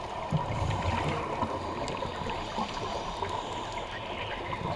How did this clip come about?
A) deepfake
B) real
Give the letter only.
B